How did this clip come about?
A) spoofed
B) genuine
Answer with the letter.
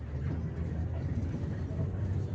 B